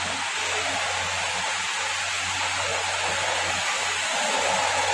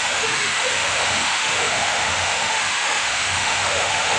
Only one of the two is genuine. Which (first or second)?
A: first